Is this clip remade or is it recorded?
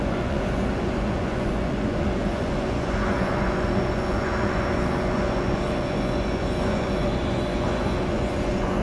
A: remade